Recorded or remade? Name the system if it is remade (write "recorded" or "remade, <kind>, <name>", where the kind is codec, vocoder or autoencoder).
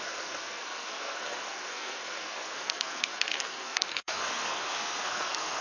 remade, codec, SNAC